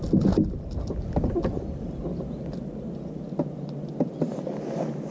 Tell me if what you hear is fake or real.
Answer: real